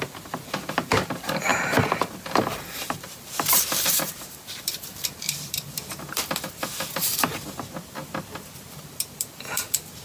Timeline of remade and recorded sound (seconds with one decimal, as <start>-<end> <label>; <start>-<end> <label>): 0.0-1.5 remade; 1.5-2.1 recorded; 2.1-7.1 remade; 7.1-8.7 recorded; 8.7-10.0 remade